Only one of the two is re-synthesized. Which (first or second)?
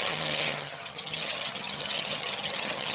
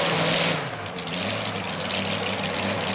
first